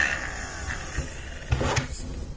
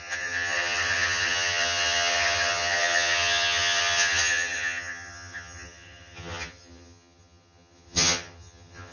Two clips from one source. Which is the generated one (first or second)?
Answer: second